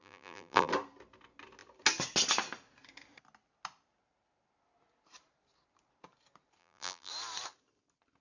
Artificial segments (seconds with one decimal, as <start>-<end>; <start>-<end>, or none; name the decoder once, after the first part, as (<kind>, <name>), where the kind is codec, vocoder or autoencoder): 0.0-0.7 (vocoder, BigVGAN v2); 6.6-7.1